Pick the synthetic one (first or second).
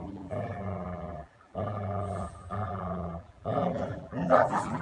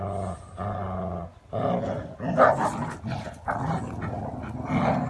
first